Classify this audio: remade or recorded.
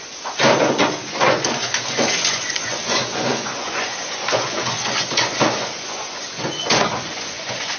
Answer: remade